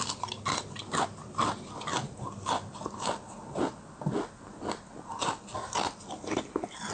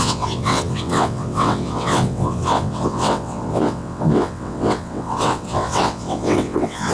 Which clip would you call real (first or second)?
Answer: first